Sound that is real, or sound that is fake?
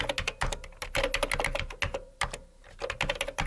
real